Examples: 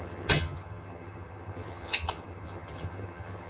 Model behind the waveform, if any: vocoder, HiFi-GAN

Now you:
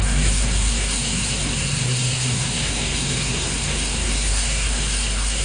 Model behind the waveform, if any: codec, SNAC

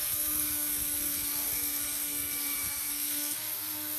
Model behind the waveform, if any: codec, SNAC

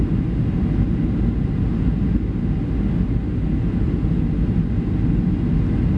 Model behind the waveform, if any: none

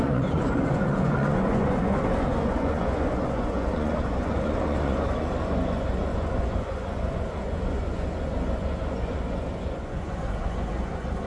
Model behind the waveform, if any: vocoder, Vocos